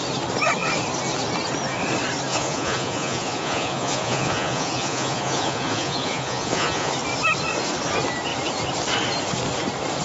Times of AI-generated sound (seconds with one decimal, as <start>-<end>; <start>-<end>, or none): 2.3-6.9